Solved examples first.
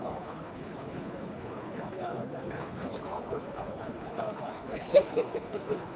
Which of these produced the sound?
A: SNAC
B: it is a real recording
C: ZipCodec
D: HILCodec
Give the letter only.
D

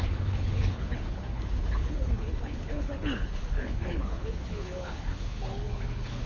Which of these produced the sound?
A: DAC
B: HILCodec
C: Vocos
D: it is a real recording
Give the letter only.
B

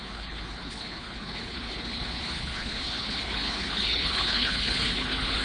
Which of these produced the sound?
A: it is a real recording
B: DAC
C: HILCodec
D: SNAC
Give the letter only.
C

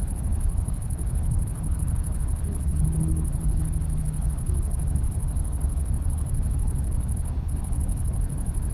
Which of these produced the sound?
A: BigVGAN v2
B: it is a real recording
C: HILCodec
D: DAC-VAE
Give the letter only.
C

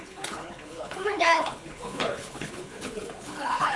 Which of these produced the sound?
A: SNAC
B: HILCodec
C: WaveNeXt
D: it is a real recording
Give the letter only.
B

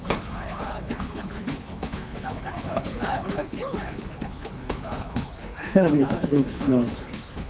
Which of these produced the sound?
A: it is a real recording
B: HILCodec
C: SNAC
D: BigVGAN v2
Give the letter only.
B